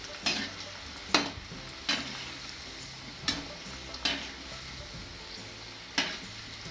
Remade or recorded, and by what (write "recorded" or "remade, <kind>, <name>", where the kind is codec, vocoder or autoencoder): recorded